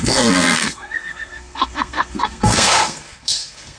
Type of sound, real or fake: fake